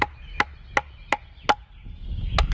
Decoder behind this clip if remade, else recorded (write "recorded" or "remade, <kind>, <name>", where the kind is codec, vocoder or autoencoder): recorded